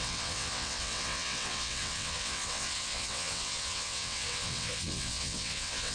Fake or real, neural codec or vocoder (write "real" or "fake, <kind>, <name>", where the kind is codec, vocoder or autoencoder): fake, vocoder, WaveNeXt